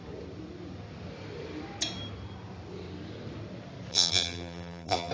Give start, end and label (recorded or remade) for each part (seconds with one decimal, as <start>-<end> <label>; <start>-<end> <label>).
0.0-3.9 recorded; 3.9-5.1 remade